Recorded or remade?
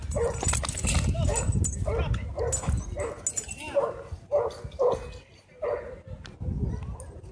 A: recorded